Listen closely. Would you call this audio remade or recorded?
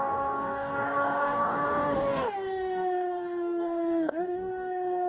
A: remade